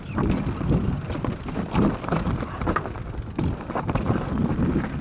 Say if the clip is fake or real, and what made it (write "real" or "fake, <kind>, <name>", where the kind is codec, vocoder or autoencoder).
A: fake, vocoder, BigVGAN v2